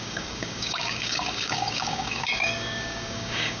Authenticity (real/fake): fake